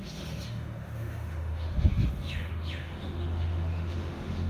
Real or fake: fake